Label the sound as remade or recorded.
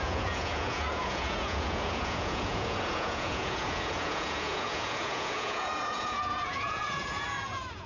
remade